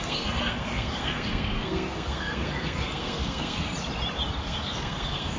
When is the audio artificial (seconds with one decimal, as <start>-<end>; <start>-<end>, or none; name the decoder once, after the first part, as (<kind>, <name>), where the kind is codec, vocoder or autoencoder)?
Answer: 0.0-3.7 (codec, SNAC); 4.4-5.4